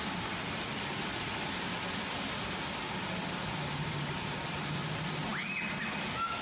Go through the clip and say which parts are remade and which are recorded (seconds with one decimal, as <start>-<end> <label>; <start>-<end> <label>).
0.0-6.4 recorded